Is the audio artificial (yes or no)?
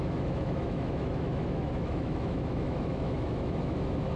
yes